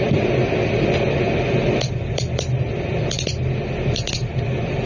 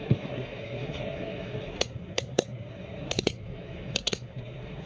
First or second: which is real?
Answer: first